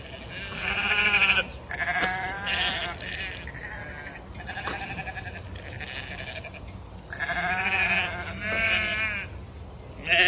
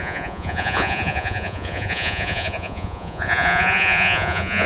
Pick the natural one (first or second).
first